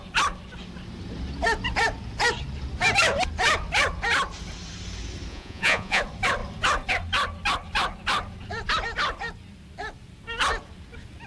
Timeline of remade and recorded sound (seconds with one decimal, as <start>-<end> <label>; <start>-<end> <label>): 0.0-5.3 recorded; 5.3-6.0 remade; 6.0-11.3 recorded